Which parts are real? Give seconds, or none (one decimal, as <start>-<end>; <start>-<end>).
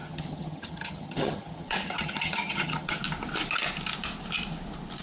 3.0-5.0